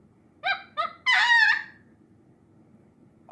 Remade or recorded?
recorded